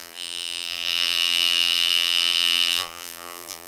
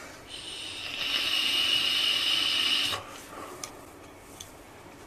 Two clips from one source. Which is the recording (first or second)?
second